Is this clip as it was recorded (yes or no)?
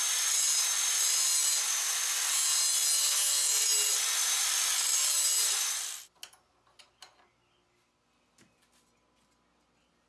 yes